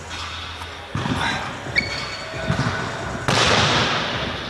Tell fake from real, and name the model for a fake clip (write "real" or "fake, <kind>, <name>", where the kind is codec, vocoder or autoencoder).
real